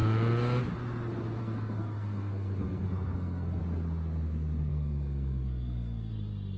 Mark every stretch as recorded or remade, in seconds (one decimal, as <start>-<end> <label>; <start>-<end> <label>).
0.0-1.4 recorded; 1.4-3.6 remade; 3.6-4.7 recorded; 4.7-6.1 remade; 6.1-6.6 recorded